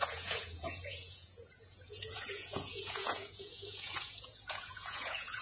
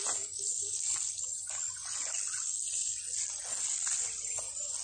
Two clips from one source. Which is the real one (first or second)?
second